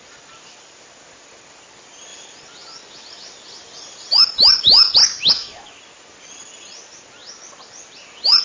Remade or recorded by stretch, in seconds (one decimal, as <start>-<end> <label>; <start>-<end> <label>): 0.0-5.0 recorded; 5.0-5.8 remade; 5.8-8.4 recorded